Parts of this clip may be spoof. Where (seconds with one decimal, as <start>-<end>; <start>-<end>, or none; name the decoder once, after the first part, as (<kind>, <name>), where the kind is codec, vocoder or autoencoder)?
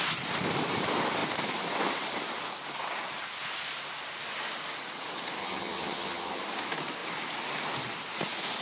5.4-6.4 (vocoder, HiFi-GAN)